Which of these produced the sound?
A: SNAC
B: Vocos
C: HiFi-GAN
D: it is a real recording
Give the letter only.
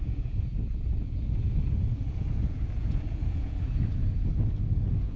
B